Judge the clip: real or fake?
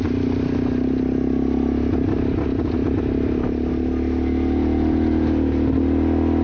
real